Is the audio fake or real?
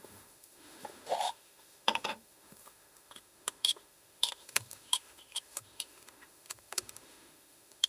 fake